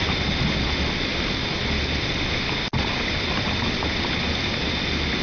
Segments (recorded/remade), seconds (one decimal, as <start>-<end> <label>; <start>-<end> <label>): 0.0-5.2 recorded